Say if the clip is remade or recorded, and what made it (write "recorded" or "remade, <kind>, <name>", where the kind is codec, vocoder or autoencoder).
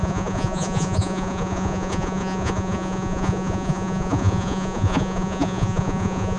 remade, vocoder, Vocos